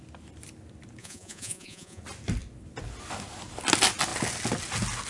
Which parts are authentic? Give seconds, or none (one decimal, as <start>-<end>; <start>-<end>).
0.0-1.0; 2.0-5.1